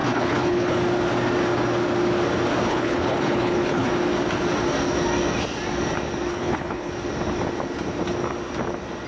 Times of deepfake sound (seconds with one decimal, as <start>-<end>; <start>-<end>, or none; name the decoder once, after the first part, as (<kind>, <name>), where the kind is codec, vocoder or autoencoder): 0.0-0.8 (codec, HILCodec); 2.7-3.9; 6.3-6.9